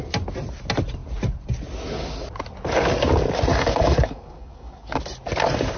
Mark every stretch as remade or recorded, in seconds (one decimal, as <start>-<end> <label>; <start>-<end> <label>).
0.0-3.5 recorded; 3.5-5.0 remade; 5.0-5.8 recorded